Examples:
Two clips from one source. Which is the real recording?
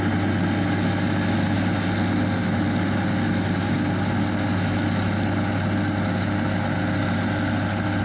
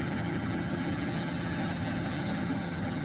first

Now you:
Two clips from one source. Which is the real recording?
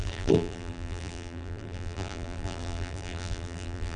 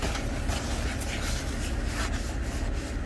second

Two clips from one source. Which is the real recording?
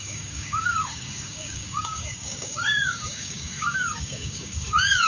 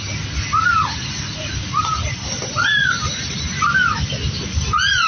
second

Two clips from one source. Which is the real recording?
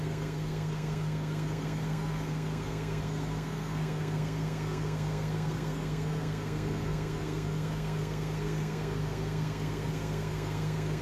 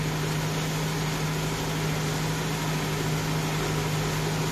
second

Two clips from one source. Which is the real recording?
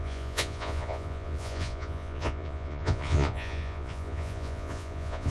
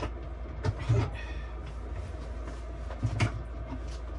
second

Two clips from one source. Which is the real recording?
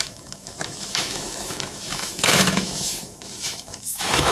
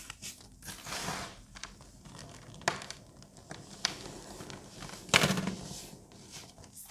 second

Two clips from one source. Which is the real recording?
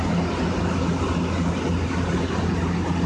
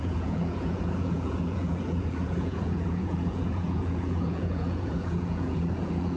first